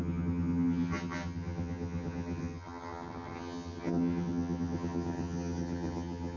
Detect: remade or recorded remade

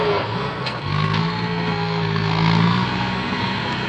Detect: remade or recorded remade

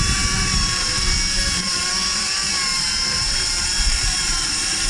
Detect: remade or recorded remade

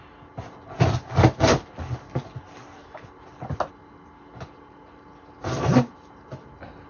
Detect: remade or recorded recorded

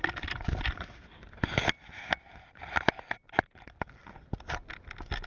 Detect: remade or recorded recorded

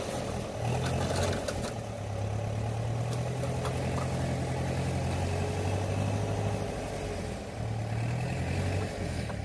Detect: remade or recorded recorded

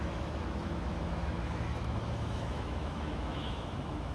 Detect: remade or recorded remade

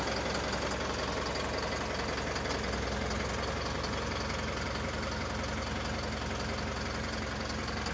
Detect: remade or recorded recorded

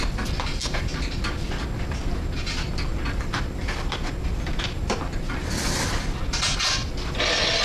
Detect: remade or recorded recorded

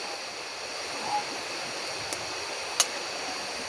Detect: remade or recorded recorded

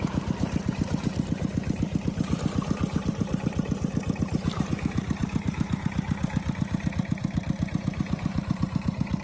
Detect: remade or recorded remade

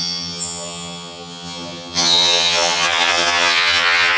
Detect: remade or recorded remade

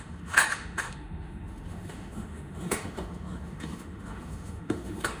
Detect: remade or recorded remade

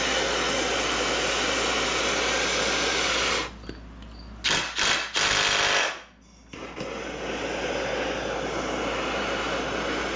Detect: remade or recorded recorded